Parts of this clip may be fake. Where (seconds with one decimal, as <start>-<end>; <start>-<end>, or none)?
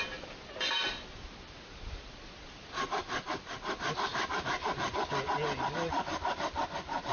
none